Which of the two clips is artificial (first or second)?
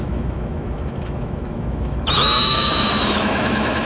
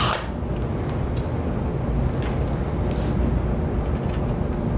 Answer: first